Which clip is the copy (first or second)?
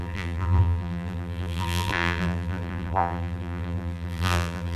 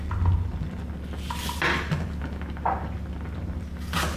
first